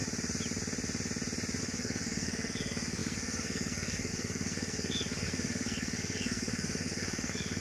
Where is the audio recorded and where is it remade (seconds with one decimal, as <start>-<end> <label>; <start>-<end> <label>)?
0.0-1.6 recorded; 1.6-7.6 remade